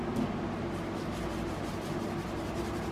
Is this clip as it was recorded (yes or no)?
yes